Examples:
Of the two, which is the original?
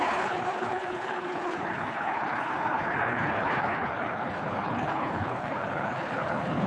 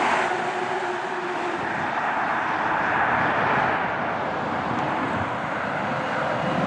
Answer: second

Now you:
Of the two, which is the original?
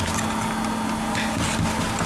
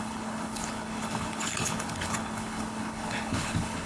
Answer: first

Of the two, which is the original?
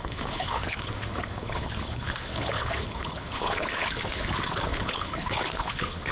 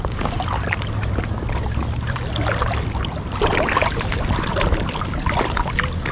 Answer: second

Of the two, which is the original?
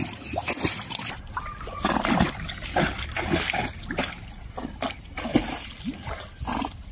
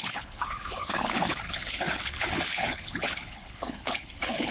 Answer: first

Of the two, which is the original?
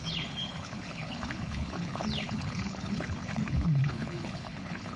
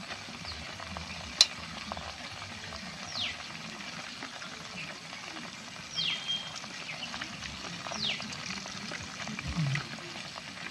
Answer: second